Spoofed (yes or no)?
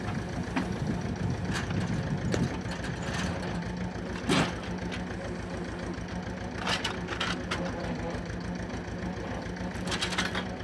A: no